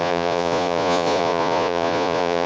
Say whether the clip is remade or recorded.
remade